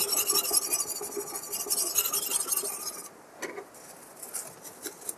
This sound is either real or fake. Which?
real